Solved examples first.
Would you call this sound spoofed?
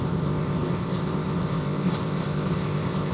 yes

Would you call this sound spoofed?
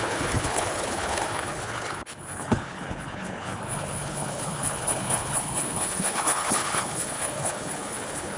yes